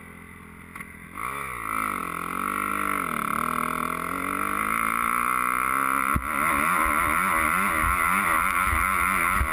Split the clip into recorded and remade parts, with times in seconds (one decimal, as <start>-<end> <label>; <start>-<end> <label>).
0.0-9.5 recorded